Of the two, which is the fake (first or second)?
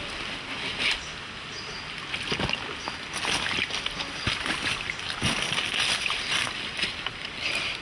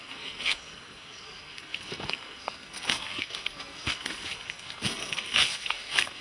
second